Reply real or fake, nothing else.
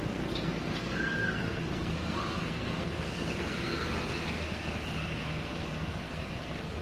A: fake